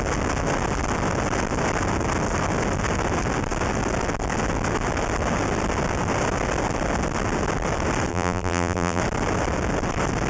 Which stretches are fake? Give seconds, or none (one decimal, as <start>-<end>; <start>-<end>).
8.1-9.0